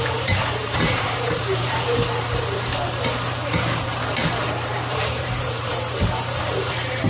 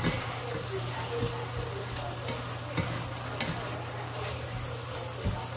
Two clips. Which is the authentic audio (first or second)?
second